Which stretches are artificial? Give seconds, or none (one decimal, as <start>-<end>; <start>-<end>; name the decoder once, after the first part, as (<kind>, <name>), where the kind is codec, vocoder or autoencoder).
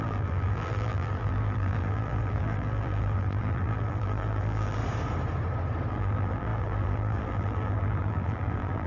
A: 0.0-4.8 (vocoder, BigVGAN v2); 5.9-8.9